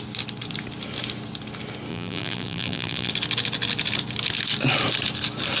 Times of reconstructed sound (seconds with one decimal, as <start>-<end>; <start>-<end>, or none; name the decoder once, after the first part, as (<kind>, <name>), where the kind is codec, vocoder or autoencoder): 1.9-3.1 (vocoder, BigVGAN v2)